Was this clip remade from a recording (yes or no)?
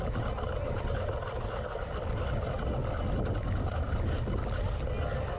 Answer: no